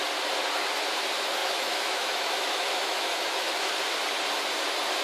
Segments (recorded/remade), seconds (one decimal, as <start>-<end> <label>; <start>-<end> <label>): 0.0-1.4 recorded; 1.4-3.7 remade; 3.7-5.0 recorded